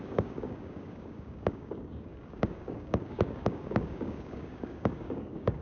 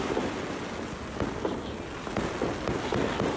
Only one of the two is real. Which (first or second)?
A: second